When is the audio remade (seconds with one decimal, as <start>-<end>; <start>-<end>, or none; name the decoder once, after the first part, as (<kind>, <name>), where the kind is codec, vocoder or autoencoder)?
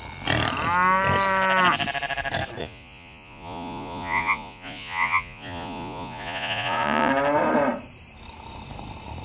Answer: 2.6-7.1 (vocoder, Vocos)